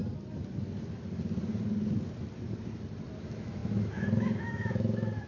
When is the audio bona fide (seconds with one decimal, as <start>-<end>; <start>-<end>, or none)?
0.0-3.2